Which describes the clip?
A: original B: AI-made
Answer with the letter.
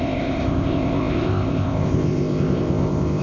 B